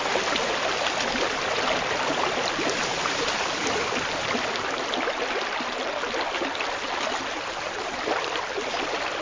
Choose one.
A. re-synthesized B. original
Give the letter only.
B